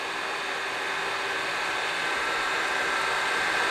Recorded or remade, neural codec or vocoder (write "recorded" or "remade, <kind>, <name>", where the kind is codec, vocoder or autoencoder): recorded